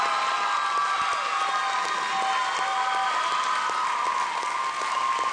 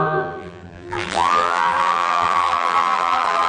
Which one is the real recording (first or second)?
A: first